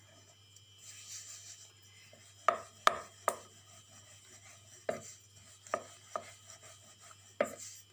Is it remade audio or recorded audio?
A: recorded